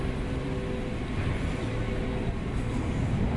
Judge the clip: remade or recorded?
recorded